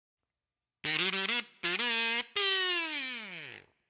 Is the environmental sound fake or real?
real